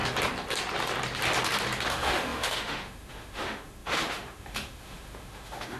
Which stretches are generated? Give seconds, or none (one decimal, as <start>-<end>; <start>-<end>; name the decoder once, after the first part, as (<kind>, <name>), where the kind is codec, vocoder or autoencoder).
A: 1.9-5.8 (autoencoder, DAC-VAE)